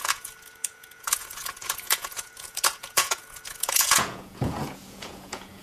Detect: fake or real fake